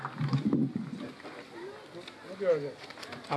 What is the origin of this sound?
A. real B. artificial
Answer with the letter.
A